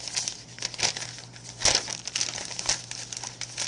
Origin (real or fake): real